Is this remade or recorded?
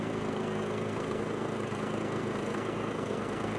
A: remade